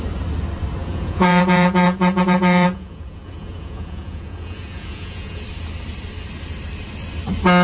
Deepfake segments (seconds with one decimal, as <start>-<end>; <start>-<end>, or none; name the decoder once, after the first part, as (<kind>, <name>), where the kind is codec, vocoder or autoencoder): 0.8-5.4 (vocoder, Vocos)